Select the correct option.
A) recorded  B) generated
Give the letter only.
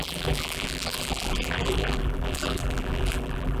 B